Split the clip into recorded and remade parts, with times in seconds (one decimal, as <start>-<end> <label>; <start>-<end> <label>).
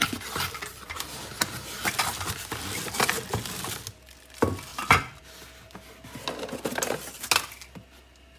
0.0-0.7 recorded; 0.7-3.1 remade; 3.1-4.7 recorded; 4.7-5.2 remade; 5.2-8.4 recorded